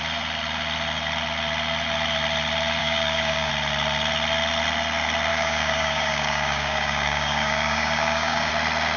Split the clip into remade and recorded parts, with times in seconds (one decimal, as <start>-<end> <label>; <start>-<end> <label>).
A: 0.0-2.8 recorded; 2.8-3.5 remade; 3.5-5.3 recorded; 5.3-8.5 remade; 8.5-9.0 recorded

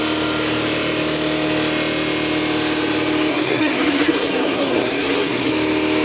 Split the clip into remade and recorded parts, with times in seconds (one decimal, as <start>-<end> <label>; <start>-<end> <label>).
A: 0.0-3.3 recorded; 3.3-5.5 remade; 5.5-6.0 recorded

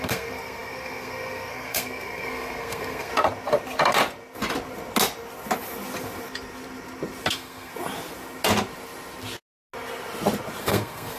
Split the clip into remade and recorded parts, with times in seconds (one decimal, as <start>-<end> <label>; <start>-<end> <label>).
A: 0.0-3.1 remade; 3.1-7.3 recorded; 7.3-7.7 remade; 7.7-10.6 recorded; 10.6-11.2 remade

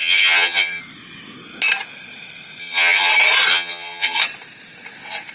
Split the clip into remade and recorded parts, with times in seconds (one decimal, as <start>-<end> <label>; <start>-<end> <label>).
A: 0.0-0.8 remade; 0.8-2.6 recorded; 2.6-3.1 remade; 3.1-3.5 recorded; 3.5-4.2 remade; 4.2-5.3 recorded

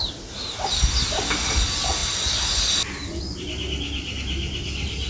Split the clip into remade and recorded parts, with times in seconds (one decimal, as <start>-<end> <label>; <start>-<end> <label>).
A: 0.0-5.1 recorded

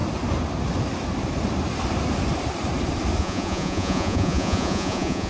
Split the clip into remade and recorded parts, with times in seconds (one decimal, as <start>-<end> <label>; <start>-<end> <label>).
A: 0.0-3.2 recorded; 3.2-5.3 remade